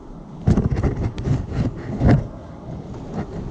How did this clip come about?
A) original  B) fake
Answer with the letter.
A